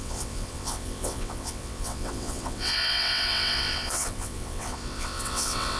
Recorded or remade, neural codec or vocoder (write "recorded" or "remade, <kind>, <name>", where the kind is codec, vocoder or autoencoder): remade, vocoder, WaveNeXt